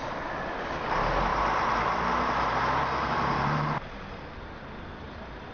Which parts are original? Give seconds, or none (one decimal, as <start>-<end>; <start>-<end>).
0.0-1.3; 4.2-5.5